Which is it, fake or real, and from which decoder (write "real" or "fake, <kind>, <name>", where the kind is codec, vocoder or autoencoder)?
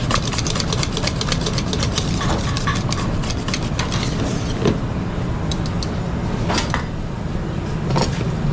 real